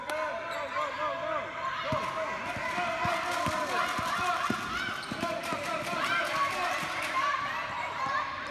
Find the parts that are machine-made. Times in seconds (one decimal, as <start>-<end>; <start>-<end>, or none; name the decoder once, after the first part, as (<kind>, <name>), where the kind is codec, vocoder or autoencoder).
none

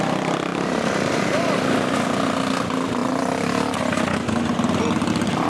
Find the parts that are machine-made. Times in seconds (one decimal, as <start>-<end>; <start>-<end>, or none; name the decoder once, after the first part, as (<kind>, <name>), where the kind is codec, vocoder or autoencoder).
none

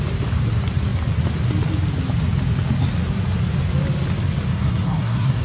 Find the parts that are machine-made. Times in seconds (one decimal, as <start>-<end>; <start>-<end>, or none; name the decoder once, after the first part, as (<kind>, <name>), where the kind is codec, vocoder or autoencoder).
4.5-5.4 (codec, SNAC)

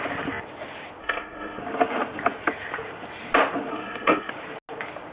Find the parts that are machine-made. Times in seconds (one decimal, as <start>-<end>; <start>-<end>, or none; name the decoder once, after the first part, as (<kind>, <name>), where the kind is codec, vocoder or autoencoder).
1.0-1.6 (codec, SNAC); 3.7-4.3

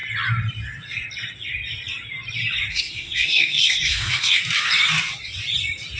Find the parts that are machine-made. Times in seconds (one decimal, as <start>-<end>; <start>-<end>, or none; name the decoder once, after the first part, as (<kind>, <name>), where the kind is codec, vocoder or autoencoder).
2.7-4.4 (codec, SNAC)

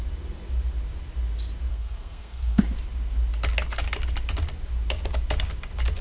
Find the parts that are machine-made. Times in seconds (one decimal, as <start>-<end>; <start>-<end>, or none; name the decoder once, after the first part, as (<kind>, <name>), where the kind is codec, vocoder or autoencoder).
1.7-2.6 (codec, SNAC)